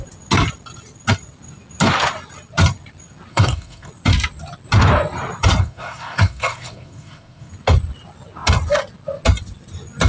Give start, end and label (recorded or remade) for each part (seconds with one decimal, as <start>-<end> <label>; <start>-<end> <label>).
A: 0.0-3.3 recorded; 3.3-3.9 remade; 3.9-5.6 recorded; 5.6-7.5 remade; 7.5-10.1 recorded